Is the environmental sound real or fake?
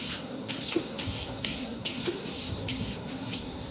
fake